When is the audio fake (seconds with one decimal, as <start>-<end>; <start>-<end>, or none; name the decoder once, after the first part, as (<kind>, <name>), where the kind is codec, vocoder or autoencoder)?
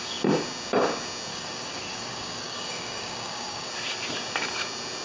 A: 1.3-3.7 (codec, DAC)